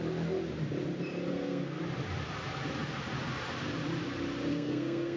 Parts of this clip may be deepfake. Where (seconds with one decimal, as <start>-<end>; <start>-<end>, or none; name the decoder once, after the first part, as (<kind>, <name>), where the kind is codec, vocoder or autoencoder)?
1.3-1.8 (codec, SNAC); 4.5-5.2